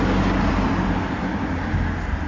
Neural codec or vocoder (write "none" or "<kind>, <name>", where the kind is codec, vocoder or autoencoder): none